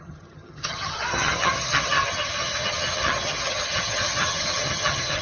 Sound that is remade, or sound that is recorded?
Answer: remade